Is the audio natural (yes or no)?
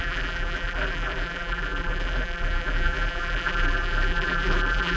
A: no